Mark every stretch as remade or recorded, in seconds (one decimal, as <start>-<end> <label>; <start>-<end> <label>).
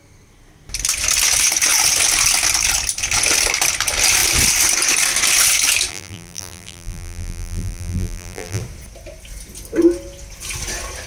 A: 0.0-5.9 recorded; 5.9-8.6 remade; 8.6-11.1 recorded